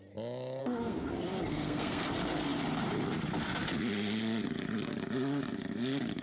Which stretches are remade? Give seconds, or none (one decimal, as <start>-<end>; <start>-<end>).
0.6-1.1; 1.5-2.0